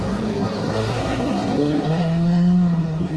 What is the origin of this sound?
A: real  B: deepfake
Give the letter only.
B